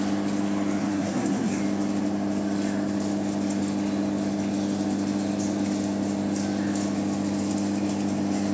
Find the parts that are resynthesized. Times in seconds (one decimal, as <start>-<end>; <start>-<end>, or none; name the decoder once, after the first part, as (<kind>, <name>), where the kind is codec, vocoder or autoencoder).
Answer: 0.8-1.6 (codec, SNAC)